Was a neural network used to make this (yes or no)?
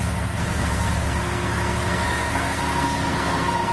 yes